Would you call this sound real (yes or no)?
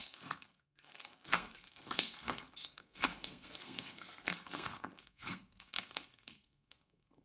no